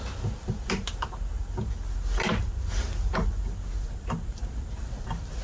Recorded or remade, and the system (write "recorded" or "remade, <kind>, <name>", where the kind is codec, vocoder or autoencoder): recorded